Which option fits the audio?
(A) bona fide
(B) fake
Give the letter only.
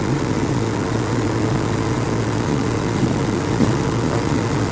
B